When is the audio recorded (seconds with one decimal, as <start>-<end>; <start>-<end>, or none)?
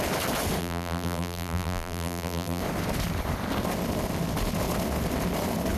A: 0.0-0.6; 2.6-5.8